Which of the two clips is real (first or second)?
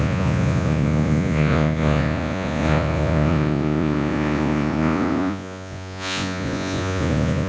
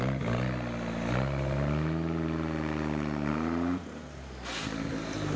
second